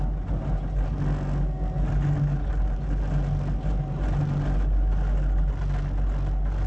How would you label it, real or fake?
real